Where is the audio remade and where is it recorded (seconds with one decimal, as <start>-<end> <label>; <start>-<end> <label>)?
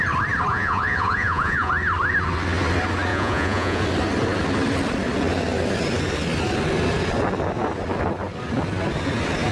0.0-0.5 recorded; 0.5-1.7 remade; 1.7-3.1 recorded; 3.1-3.8 remade; 3.8-9.5 recorded